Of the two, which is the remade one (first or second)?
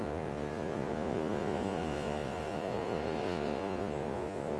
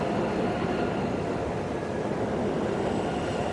first